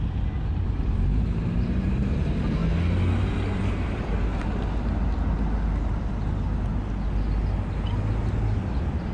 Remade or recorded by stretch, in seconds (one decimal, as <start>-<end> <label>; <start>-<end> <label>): 0.0-2.6 remade; 2.6-3.2 recorded; 3.2-4.3 remade; 4.3-8.6 recorded; 8.6-9.1 remade